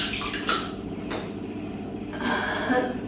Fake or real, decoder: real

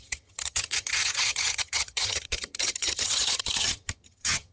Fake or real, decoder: fake, vocoder, HiFi-GAN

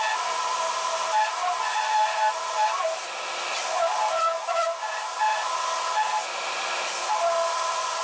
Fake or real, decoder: real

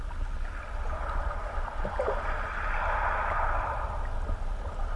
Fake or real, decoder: real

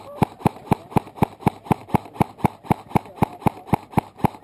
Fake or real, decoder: real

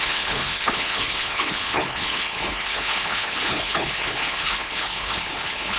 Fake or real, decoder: fake, codec, HILCodec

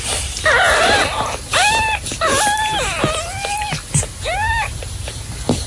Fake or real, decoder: real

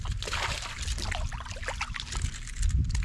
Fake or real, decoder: real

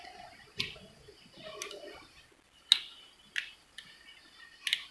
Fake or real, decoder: real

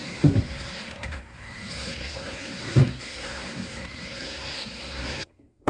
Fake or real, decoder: fake, codec, SNAC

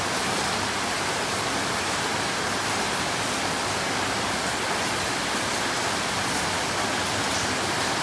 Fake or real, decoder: real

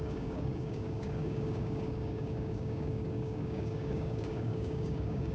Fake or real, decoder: fake, codec, DAC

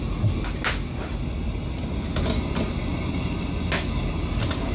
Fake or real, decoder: real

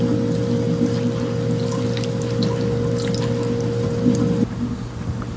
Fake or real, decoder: real